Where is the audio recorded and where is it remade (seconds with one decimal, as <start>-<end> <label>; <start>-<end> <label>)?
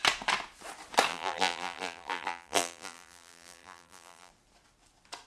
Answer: 0.0-1.1 recorded; 1.1-4.3 remade; 4.3-5.3 recorded